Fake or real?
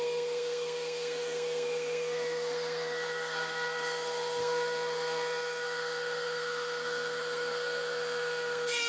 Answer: fake